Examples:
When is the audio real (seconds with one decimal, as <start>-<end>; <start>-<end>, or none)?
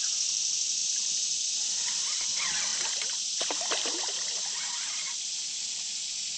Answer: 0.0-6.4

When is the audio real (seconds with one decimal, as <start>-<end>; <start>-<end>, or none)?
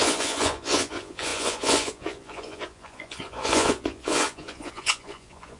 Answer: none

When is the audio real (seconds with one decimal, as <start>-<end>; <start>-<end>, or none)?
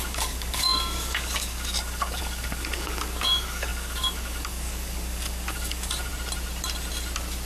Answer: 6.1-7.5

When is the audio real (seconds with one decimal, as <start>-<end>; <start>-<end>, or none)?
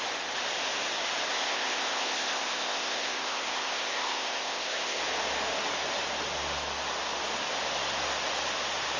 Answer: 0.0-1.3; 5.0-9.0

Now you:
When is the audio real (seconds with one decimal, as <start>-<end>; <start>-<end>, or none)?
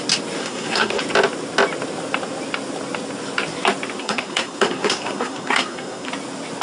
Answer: 0.0-0.4; 1.0-4.0; 6.1-6.6